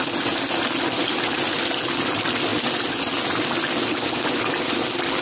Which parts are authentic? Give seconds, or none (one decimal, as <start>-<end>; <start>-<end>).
0.0-5.2